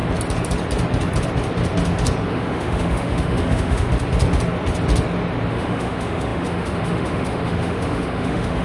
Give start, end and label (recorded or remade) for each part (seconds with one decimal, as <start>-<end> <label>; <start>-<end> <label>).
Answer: 0.0-2.3 recorded; 2.3-3.9 remade; 3.9-5.5 recorded; 5.5-8.6 remade